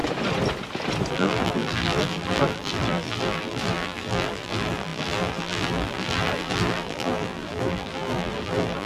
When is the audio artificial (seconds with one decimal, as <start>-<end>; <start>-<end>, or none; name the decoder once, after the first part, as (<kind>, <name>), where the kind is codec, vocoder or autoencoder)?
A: 1.1-8.9 (vocoder, BigVGAN v2)